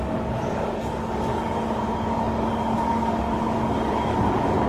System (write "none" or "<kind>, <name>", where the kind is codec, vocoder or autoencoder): codec, DAC